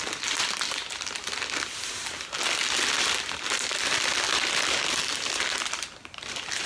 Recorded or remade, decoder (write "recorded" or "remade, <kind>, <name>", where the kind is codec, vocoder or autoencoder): recorded